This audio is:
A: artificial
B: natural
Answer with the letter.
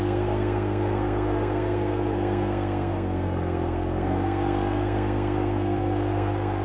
A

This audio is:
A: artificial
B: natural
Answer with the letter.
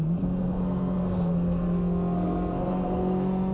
A